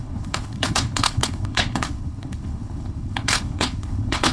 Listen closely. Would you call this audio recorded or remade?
remade